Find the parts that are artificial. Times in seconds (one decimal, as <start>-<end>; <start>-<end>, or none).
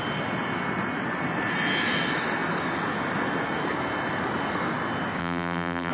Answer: 5.2-5.9